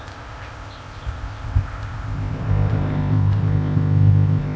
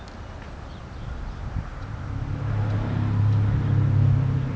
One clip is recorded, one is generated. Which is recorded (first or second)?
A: second